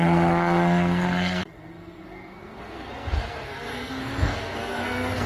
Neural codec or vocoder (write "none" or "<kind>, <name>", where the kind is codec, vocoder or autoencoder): codec, SNAC